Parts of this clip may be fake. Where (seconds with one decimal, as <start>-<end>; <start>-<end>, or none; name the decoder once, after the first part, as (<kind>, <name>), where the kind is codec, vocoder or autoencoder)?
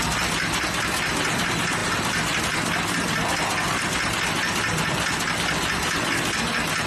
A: none